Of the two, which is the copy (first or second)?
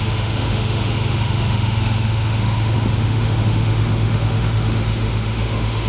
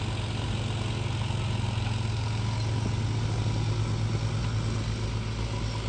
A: first